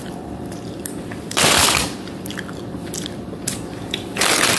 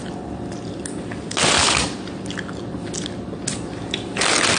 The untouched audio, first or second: second